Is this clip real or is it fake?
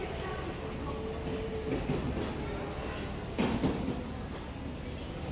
real